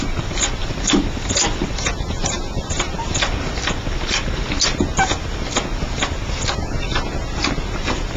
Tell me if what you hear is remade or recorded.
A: recorded